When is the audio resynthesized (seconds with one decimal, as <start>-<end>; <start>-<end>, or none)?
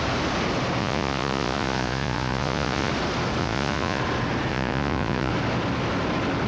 0.8-2.9; 3.4-4.0; 4.5-5.3